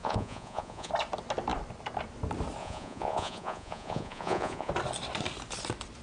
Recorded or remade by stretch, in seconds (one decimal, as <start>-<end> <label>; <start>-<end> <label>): 0.0-0.9 remade; 0.9-2.6 recorded; 2.6-4.7 remade; 4.7-6.0 recorded